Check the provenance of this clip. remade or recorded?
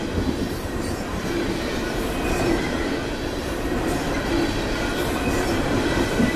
remade